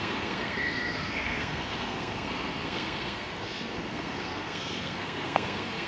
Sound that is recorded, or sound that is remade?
remade